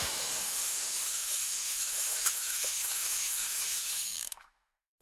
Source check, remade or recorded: remade